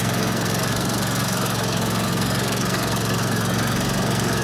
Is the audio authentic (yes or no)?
no